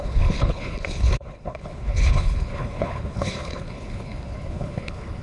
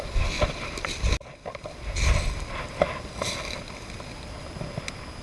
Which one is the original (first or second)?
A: second